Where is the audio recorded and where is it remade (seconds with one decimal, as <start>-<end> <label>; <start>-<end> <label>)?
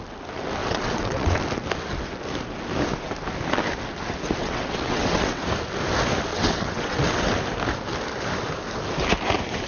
0.0-0.6 recorded; 0.6-1.4 remade; 1.4-4.4 recorded; 4.4-5.4 remade; 5.4-6.3 recorded; 6.3-7.4 remade; 7.4-9.7 recorded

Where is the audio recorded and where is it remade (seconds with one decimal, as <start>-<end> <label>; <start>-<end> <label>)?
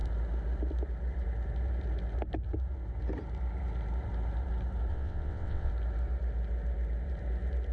0.0-4.9 recorded; 4.9-5.7 remade; 5.7-7.7 recorded